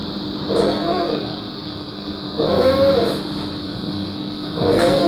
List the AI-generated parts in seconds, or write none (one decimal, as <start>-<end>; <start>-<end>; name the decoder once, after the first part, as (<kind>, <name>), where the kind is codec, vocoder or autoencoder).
0.6-2.7 (codec, SNAC); 3.6-5.1